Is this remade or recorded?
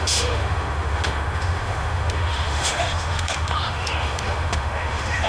remade